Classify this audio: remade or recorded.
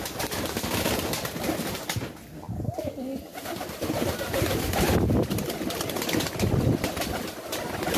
recorded